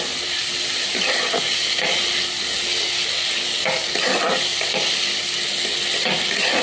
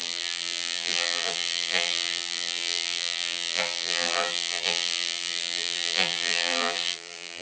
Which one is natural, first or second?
first